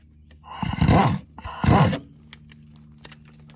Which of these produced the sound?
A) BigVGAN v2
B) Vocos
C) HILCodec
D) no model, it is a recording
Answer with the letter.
D